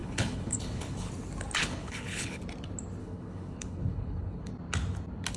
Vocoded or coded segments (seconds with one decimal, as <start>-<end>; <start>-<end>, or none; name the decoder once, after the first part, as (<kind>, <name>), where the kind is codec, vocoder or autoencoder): 0.0-1.1 (codec, HILCodec); 1.6-2.4; 3.0-4.5